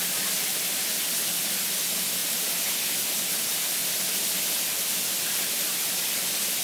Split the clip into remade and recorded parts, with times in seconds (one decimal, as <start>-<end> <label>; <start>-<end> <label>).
0.0-6.6 recorded